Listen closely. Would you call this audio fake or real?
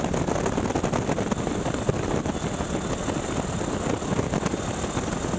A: real